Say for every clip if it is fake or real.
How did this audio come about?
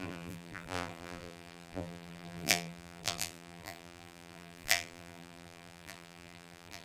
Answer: fake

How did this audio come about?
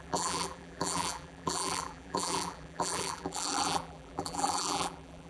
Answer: fake